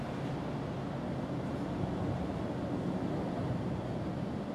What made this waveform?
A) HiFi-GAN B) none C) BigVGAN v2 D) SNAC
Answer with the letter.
B